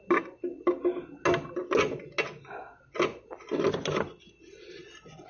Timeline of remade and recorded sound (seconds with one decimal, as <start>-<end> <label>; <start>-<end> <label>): 0.0-0.5 recorded; 0.5-1.0 remade; 1.0-5.3 recorded